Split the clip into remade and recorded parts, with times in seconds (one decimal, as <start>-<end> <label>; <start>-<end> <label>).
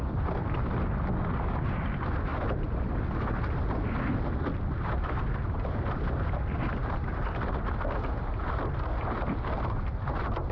0.0-2.3 recorded; 2.3-2.8 remade; 2.8-10.5 recorded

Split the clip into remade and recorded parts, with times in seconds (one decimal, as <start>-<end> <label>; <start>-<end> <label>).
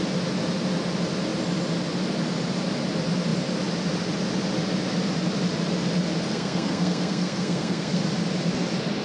0.0-6.3 recorded; 6.3-8.0 remade; 8.0-9.0 recorded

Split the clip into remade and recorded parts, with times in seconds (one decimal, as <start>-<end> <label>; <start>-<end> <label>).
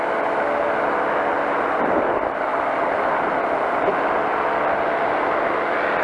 0.0-6.0 recorded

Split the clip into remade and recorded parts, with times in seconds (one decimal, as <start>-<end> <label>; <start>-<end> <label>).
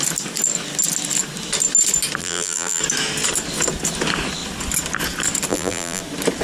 0.0-2.2 recorded; 2.2-2.8 remade; 2.8-5.5 recorded; 5.5-6.0 remade; 6.0-6.4 recorded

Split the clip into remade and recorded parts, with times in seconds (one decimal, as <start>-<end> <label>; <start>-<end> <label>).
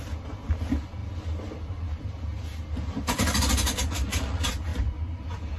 0.0-5.6 recorded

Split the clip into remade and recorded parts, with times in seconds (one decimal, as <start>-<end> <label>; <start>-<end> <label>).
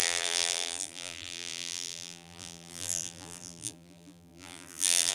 0.0-5.1 remade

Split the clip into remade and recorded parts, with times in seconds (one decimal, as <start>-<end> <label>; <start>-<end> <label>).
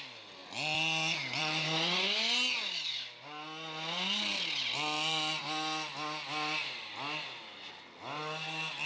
0.0-8.9 recorded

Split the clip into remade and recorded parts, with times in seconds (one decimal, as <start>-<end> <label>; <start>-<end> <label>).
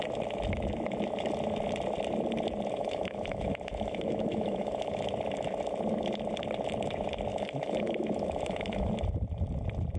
0.0-2.8 recorded; 2.8-5.0 remade; 5.0-7.3 recorded; 7.3-8.9 remade; 8.9-10.0 recorded